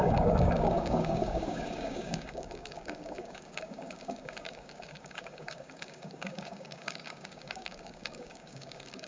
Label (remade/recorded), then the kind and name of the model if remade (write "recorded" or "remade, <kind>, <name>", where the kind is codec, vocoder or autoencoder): remade, codec, DAC